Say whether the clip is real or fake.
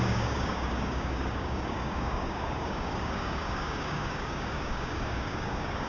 fake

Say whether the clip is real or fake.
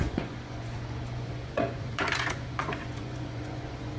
fake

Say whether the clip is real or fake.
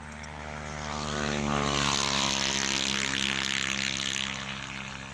real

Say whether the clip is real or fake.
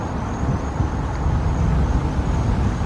real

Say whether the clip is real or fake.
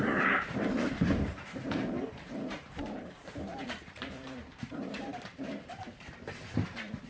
fake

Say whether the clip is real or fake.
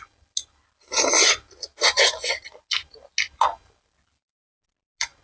real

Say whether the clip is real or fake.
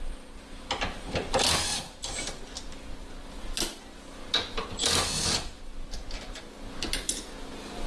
real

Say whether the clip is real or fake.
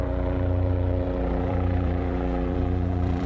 fake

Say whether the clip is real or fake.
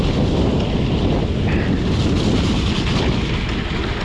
real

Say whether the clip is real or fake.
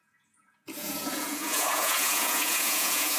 fake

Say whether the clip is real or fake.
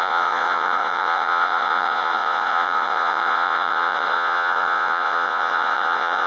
fake